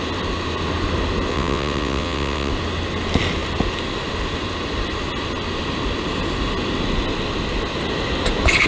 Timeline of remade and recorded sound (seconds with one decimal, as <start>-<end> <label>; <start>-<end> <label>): 0.0-1.3 recorded; 1.3-2.5 remade; 2.5-8.7 recorded